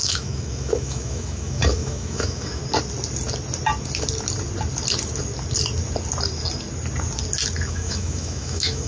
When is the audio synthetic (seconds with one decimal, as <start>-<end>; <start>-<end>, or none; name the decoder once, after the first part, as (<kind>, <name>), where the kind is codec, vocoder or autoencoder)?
0.0-2.6 (autoencoder, DAC-VAE); 7.7-8.9